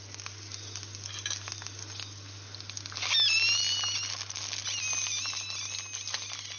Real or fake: real